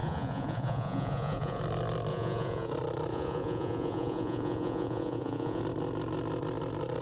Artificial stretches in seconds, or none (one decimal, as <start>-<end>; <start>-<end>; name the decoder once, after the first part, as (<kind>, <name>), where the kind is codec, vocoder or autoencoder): 0.0-1.6 (vocoder, Vocos); 2.1-2.7; 3.1-5.6